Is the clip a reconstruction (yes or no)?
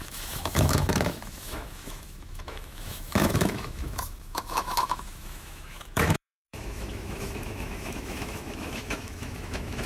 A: yes